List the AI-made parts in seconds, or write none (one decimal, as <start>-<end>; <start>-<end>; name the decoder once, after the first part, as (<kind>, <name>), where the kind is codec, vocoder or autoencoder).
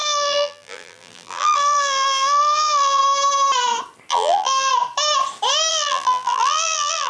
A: 0.0-3.0 (vocoder, BigVGAN v2); 4.1-4.7; 5.7-7.1